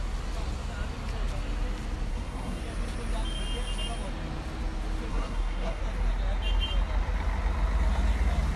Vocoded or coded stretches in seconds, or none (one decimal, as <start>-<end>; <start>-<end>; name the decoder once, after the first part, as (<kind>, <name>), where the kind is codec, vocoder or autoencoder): 2.1-2.6 (codec, SNAC); 5.1-5.8